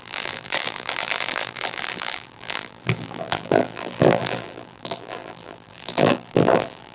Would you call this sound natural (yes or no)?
no